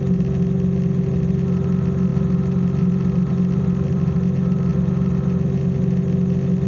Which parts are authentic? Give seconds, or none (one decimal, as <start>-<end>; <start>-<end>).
0.0-6.7

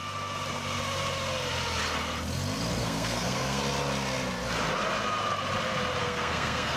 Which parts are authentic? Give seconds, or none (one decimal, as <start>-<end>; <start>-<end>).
0.0-2.8; 3.6-6.0

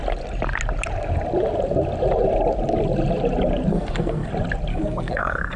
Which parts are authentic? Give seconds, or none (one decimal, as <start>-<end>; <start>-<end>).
0.0-3.7; 4.3-4.7

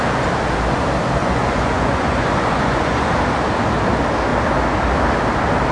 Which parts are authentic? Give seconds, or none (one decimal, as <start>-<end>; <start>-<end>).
0.0-1.2; 3.1-5.7

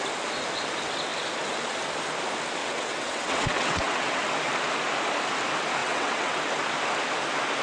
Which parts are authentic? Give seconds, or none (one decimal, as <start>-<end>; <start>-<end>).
0.0-2.6; 4.2-5.8; 6.4-7.6

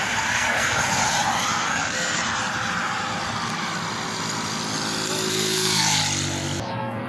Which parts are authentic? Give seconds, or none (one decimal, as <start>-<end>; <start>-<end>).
1.0-1.5; 2.2-5.3; 6.0-6.6

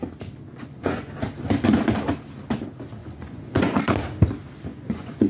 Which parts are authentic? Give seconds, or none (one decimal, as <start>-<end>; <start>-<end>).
0.0-0.5; 1.1-3.0; 3.8-4.7

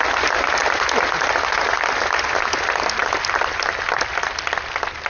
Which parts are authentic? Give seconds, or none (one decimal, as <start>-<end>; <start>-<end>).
0.0-5.1